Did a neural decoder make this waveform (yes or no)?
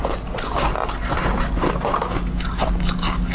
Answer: no